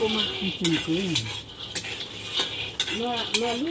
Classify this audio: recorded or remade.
recorded